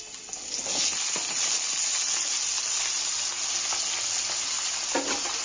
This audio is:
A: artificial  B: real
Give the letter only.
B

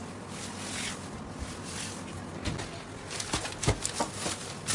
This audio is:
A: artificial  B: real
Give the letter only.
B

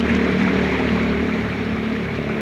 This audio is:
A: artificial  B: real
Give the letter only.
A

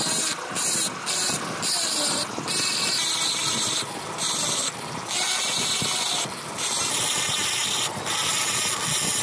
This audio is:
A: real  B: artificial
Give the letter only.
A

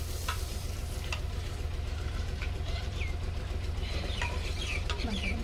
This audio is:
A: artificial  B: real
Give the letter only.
A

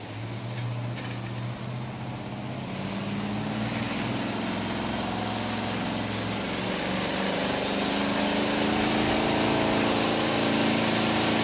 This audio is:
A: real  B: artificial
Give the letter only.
A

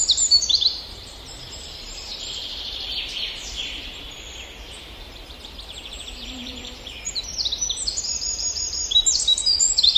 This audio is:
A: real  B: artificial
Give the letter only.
B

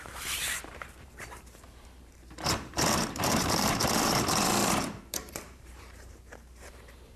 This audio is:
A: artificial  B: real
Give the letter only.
A